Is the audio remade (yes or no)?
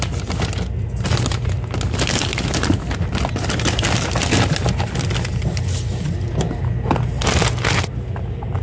no